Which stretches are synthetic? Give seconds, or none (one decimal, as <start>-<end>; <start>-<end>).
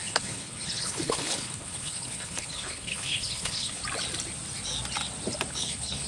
0.0-3.8; 5.5-6.1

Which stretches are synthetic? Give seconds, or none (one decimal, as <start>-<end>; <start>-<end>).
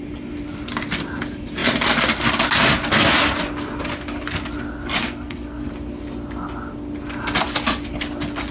5.0-5.7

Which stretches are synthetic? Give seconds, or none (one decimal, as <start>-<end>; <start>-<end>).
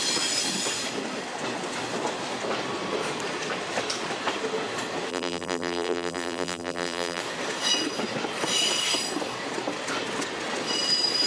5.1-7.2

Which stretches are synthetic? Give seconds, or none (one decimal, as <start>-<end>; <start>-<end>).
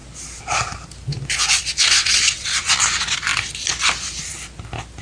2.0-2.7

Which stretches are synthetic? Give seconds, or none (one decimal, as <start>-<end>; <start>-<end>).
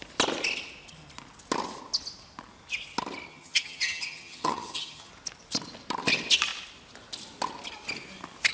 3.3-5.1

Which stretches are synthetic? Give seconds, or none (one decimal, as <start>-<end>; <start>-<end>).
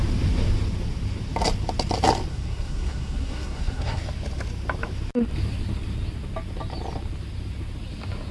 2.3-4.0